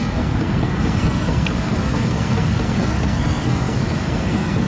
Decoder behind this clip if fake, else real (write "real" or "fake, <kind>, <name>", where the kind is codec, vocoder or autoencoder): fake, codec, SNAC